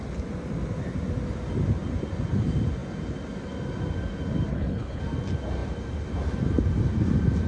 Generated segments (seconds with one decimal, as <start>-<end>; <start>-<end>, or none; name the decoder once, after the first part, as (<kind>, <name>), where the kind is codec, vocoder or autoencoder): 4.5-5.0 (codec, HILCodec)